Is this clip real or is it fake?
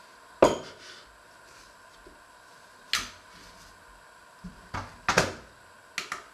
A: real